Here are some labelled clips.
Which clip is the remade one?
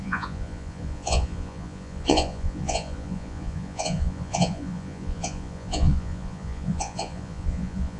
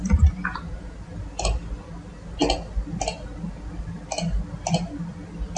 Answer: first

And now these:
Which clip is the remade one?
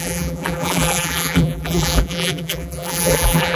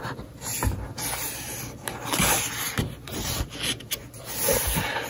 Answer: first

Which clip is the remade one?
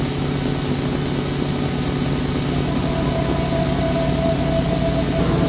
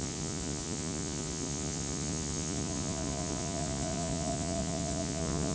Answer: second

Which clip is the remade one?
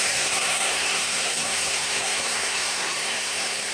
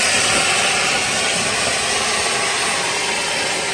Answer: first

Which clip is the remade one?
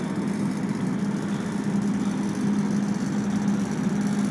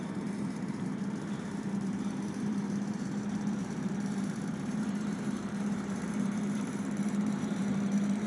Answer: second